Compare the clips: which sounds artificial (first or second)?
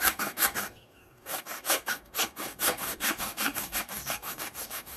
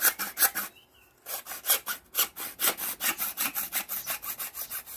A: first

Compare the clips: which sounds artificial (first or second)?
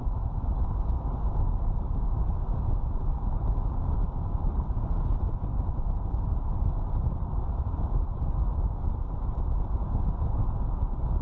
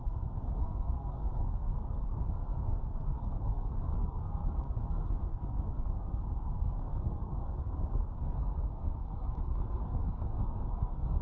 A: second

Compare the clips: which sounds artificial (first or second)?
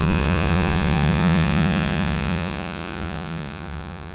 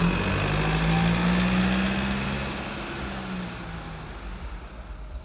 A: first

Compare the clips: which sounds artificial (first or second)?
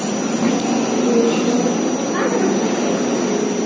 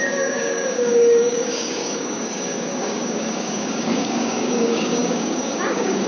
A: second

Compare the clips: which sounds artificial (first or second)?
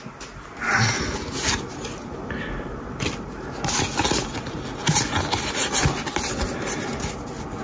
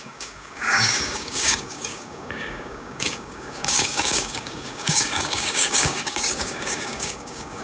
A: second